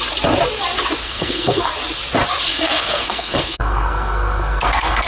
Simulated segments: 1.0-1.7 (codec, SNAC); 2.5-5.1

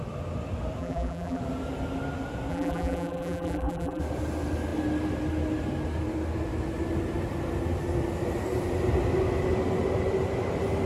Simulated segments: 0.8-1.4 (vocoder, BigVGAN v2); 2.5-4.0

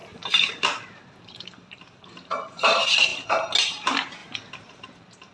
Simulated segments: 0.0-3.1 (vocoder, BigVGAN v2); 3.6-4.2; 4.7-5.3

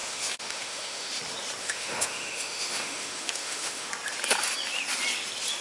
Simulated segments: 0.0-1.1 (autoencoder, DAC-VAE); 1.6-3.9

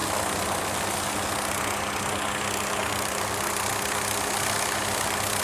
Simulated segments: none

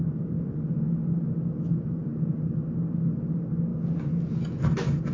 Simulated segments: none